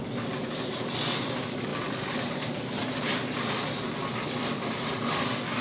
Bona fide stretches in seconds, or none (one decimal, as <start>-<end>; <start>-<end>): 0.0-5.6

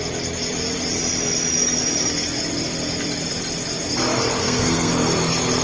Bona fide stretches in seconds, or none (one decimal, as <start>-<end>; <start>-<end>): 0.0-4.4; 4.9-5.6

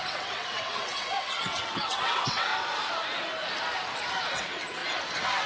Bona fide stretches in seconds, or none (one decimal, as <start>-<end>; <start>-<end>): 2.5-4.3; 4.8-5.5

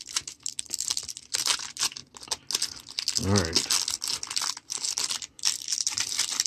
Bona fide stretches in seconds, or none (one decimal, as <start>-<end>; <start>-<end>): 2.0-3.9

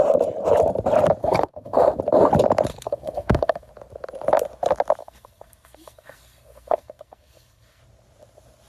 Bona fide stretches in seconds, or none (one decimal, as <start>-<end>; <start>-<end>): 0.0-1.2; 2.0-2.7; 3.7-5.0; 7.8-8.7

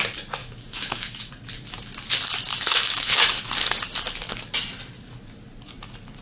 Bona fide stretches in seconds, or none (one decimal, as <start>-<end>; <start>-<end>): 0.0-0.4; 1.3-2.5; 3.4-6.2